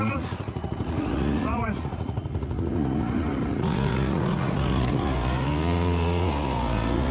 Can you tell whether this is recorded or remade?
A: remade